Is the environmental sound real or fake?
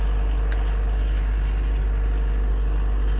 real